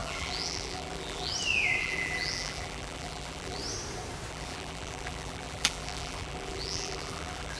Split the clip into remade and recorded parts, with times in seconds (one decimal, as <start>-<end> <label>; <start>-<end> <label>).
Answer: 0.0-1.3 remade; 1.3-1.8 recorded; 1.8-3.6 remade; 3.6-4.3 recorded; 4.3-7.6 remade